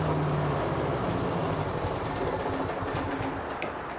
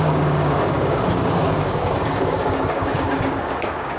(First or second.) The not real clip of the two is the second